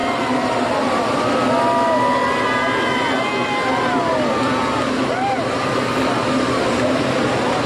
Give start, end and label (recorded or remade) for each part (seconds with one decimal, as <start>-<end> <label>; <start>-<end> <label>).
0.0-1.3 remade; 1.3-7.7 recorded